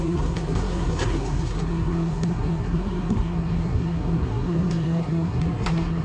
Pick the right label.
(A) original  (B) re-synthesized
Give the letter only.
B